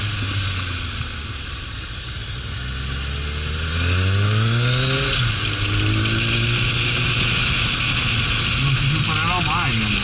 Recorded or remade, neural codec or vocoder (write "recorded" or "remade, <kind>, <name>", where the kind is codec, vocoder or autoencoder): recorded